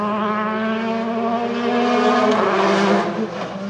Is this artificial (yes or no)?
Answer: no